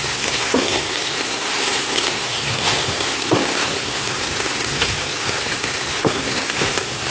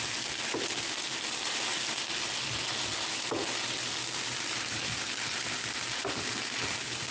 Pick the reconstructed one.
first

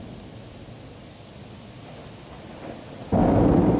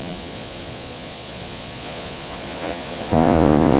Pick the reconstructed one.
second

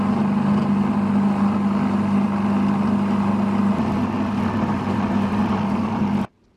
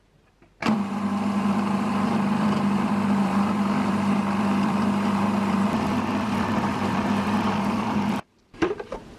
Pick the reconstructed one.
second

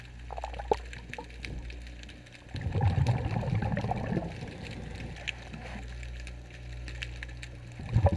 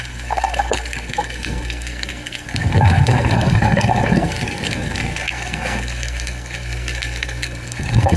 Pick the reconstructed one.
second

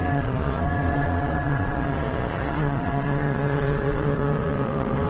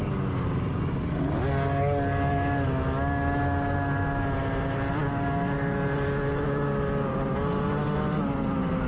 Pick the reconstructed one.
first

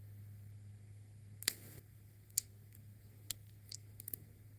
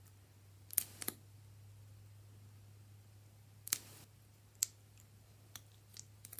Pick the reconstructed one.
first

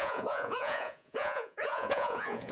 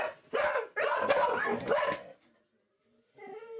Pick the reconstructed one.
first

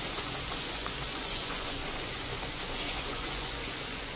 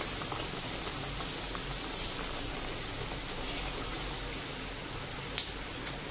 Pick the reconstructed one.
first